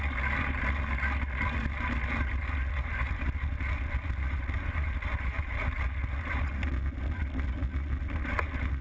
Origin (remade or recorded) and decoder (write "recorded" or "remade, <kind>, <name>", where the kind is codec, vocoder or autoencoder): recorded